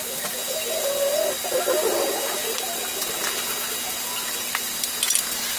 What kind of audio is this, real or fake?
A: real